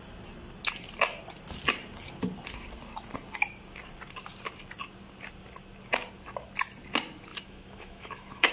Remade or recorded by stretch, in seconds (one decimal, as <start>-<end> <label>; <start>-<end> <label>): 0.0-7.3 recorded; 7.3-8.5 remade